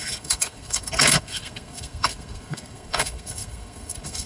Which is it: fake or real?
fake